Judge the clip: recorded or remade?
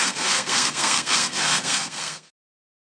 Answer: remade